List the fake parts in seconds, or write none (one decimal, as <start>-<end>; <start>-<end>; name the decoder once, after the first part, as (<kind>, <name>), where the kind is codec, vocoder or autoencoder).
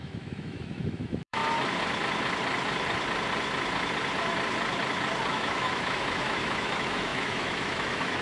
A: 0.0-1.4 (autoencoder, DAC-VAE); 5.3-8.2